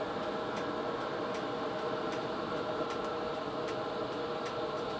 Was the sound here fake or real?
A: real